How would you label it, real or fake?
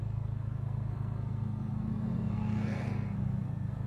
fake